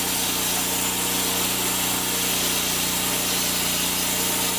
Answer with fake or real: real